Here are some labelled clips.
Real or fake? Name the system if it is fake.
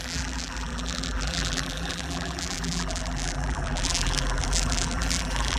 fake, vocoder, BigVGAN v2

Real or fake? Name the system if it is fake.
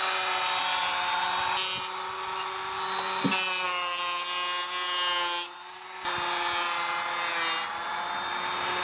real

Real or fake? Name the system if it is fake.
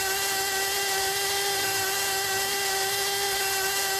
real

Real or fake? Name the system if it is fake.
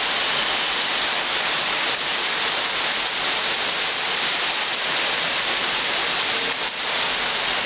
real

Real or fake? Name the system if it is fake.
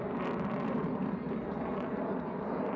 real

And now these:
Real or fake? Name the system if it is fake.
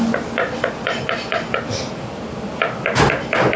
real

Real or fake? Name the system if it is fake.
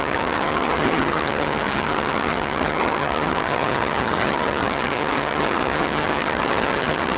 fake, vocoder, HiFi-GAN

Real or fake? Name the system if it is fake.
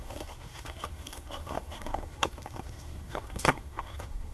fake, codec, SNAC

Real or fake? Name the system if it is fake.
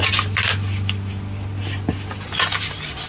real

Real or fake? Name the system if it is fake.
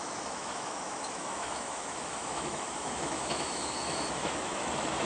fake, autoencoder, DAC-VAE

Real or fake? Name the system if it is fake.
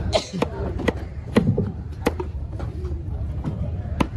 fake, vocoder, BigVGAN v2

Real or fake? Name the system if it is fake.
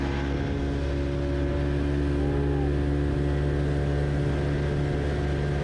real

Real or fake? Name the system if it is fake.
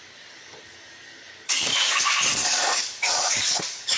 fake, codec, DAC